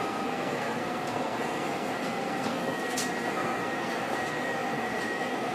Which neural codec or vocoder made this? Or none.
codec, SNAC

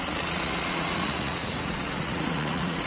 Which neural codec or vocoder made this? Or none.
vocoder, Vocos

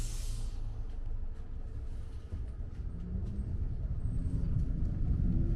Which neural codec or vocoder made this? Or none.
none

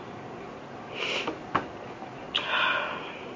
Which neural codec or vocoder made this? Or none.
none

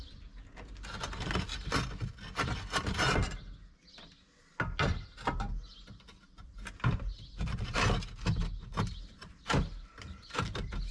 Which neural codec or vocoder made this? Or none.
none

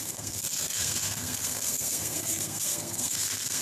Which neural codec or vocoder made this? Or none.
codec, SNAC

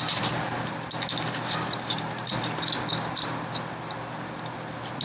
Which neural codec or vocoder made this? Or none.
none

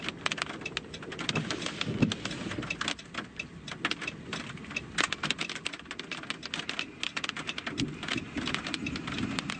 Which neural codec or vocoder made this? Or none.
none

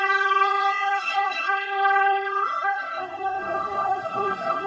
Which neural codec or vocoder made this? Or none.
codec, SNAC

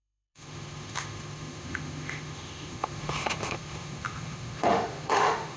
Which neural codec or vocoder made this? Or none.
autoencoder, DAC-VAE